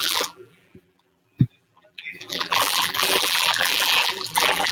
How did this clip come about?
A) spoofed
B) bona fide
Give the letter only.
A